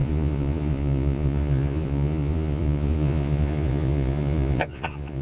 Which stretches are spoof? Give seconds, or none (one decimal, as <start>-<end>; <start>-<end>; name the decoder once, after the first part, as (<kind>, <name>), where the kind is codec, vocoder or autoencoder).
0.0-5.2 (vocoder, Vocos)

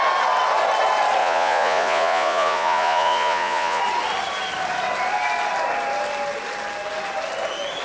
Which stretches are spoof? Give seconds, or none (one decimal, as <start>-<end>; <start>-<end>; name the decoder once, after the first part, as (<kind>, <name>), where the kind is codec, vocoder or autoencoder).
1.2-3.8 (vocoder, Vocos)

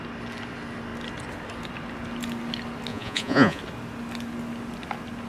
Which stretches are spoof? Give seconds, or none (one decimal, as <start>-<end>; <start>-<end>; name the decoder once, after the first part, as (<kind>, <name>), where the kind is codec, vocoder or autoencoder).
2.9-3.6 (vocoder, Vocos)

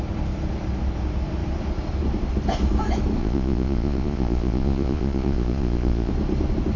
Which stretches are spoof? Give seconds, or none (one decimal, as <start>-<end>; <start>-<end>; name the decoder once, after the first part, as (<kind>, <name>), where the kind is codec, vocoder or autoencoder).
3.2-6.1 (vocoder, Vocos)

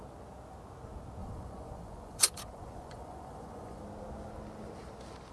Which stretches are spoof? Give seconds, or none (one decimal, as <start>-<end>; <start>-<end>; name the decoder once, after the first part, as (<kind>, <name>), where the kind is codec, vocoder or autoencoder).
1.2-3.8 (vocoder, Vocos)

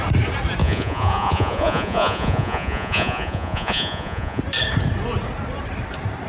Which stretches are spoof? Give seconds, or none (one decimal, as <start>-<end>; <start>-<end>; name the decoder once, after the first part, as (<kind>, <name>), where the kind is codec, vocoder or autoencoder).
0.6-4.4 (vocoder, Vocos)

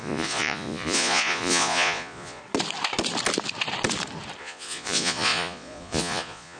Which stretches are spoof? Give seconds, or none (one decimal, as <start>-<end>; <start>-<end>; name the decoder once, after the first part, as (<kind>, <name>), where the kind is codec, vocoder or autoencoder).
0.0-2.4 (vocoder, Vocos); 4.4-6.6